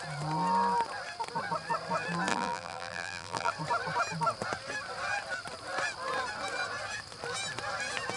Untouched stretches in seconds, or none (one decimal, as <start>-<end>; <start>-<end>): 0.0-2.3; 3.5-8.2